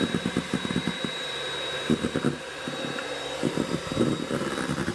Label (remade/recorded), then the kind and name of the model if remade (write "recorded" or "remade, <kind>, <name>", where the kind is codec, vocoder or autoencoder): remade, vocoder, BigVGAN v2